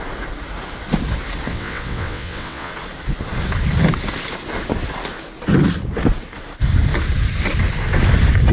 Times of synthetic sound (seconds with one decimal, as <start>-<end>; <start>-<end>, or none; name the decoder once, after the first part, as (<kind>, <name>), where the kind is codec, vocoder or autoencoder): 1.5-2.7 (vocoder, WaveNeXt)